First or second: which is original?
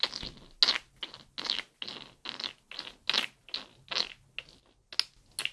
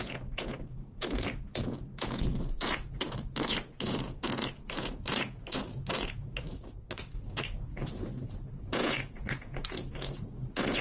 first